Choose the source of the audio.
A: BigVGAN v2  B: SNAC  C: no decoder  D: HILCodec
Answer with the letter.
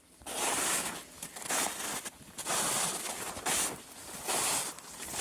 C